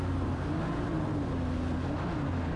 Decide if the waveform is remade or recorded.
recorded